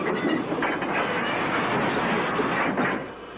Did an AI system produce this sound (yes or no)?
no